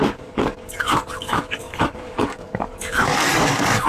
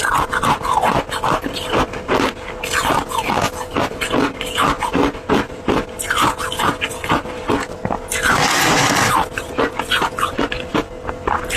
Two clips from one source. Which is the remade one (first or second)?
first